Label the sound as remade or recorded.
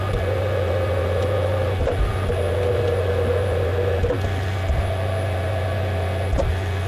recorded